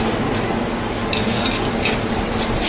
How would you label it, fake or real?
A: real